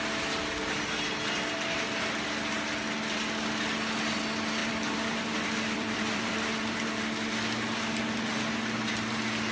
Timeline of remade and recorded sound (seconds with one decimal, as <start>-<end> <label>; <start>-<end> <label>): 0.0-4.6 recorded; 4.6-7.0 remade; 7.0-9.5 recorded